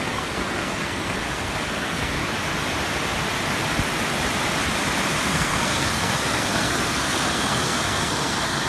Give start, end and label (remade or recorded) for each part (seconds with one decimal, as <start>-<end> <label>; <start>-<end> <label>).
0.0-2.2 remade; 2.2-5.2 recorded; 5.2-8.7 remade